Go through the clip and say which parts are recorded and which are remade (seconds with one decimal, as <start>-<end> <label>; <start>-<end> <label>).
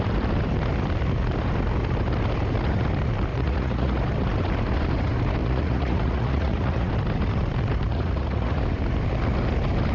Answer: 0.0-3.3 recorded; 3.3-4.0 remade; 4.0-5.4 recorded; 5.4-6.9 remade; 6.9-7.9 recorded; 7.9-8.6 remade; 8.6-9.9 recorded